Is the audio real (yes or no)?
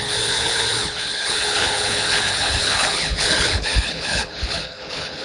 no